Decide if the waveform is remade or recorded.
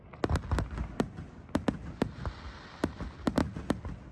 recorded